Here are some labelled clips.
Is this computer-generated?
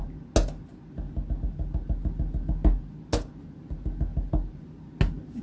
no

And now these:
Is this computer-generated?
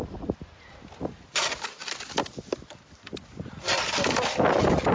no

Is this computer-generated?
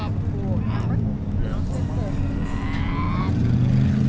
no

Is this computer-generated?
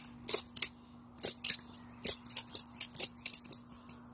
no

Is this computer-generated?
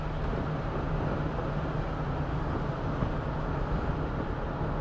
no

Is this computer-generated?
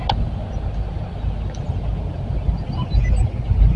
no